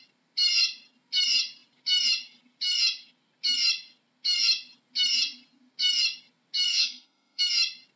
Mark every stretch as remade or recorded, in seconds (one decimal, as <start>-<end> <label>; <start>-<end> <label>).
0.0-6.7 recorded; 6.7-7.4 remade; 7.4-8.0 recorded

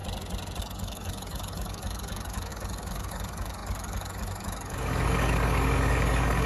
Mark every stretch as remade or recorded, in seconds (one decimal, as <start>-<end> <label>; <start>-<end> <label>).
0.0-0.6 recorded; 0.6-6.5 remade

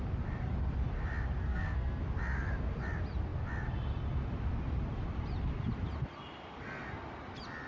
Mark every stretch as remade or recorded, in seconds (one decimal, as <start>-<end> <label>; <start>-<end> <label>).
0.0-1.4 recorded; 1.4-2.0 remade; 2.0-7.7 recorded

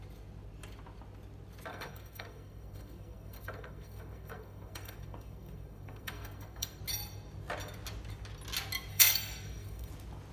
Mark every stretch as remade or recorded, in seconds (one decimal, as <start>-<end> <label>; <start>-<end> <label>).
0.0-1.7 recorded; 1.7-6.8 remade; 6.8-8.9 recorded; 8.9-9.9 remade; 9.9-10.3 recorded

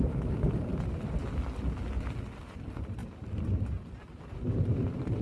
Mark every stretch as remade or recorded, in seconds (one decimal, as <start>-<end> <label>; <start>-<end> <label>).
0.0-0.7 remade; 0.7-2.4 recorded; 2.4-3.0 remade; 3.0-5.2 recorded

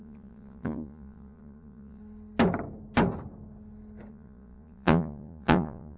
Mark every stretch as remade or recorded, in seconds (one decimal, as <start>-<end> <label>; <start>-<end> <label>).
0.0-2.0 remade; 2.0-4.1 recorded; 4.1-6.0 remade